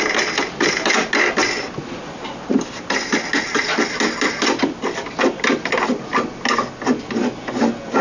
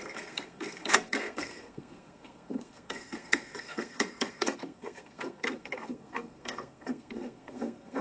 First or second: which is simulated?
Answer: second